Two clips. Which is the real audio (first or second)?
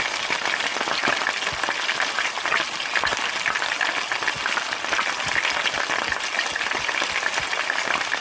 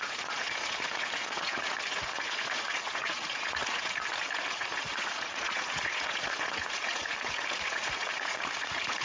first